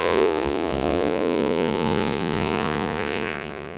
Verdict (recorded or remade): remade